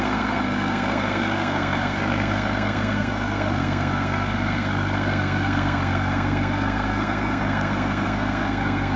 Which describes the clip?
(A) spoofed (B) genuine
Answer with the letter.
A